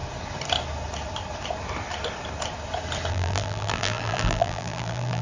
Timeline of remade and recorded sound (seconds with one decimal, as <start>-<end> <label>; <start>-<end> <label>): 0.0-3.1 recorded; 3.1-5.2 remade